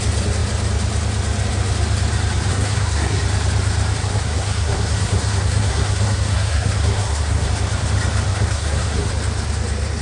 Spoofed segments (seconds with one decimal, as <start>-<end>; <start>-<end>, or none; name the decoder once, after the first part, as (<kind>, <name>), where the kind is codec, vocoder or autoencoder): 2.5-3.2 (codec, SNAC); 4.0-7.5; 8.3-9.1